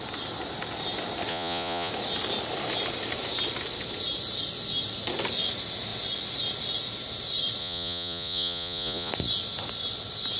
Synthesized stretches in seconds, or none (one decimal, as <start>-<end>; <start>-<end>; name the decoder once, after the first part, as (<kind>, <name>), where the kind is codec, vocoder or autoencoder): 1.3-1.9 (vocoder, Vocos); 7.6-9.1